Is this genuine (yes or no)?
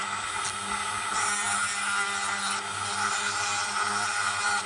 yes